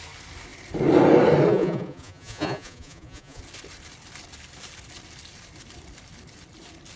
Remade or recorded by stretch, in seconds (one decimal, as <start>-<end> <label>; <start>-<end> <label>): 0.0-1.5 recorded; 1.5-3.4 remade; 3.4-7.0 recorded